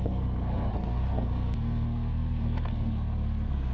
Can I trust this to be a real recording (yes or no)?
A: no